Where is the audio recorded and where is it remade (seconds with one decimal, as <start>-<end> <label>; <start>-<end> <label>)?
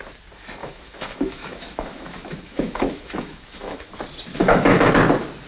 0.0-0.6 recorded; 0.6-3.9 remade; 3.9-4.3 recorded; 4.3-4.9 remade; 4.9-5.5 recorded